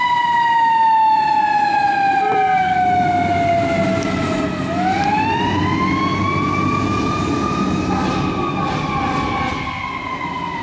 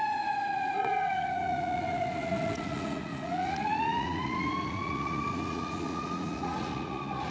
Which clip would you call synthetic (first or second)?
second